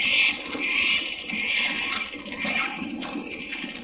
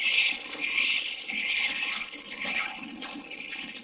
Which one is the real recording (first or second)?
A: first